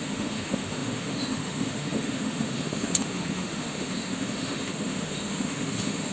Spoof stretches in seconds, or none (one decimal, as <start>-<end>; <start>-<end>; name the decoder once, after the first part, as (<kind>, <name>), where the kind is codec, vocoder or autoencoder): 0.0-6.1 (autoencoder, DAC-VAE)